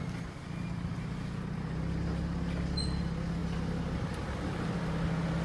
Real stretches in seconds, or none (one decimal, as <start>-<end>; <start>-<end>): 0.0-5.4